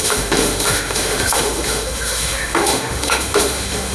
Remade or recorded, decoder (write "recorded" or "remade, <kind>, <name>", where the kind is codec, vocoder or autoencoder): remade, autoencoder, DAC-VAE